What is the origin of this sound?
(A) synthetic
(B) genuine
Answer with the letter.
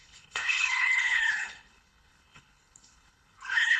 A